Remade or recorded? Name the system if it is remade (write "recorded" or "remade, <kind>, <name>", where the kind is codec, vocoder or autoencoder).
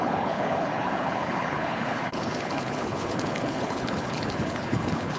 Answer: remade, codec, HILCodec